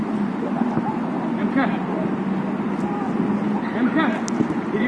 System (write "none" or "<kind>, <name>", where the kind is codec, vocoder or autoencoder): none